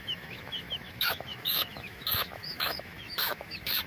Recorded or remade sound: remade